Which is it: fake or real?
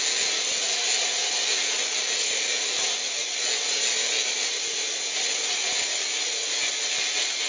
real